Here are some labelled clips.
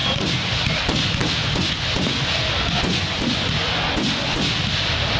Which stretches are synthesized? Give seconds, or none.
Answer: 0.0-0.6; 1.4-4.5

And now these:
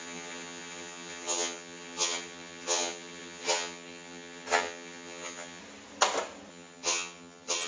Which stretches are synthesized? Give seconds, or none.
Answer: 0.0-5.6; 6.5-7.7

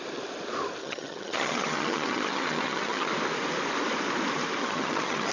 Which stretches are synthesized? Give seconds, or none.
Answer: 0.8-3.1; 4.6-5.3